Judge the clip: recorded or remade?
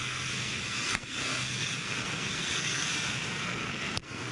remade